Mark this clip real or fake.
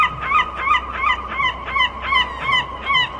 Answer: real